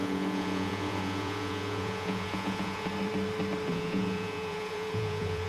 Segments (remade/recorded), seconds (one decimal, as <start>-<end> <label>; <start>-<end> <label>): 0.0-2.9 remade; 2.9-3.7 recorded; 3.7-5.5 remade